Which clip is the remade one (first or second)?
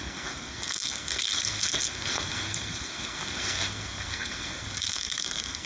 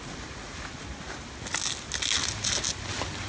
first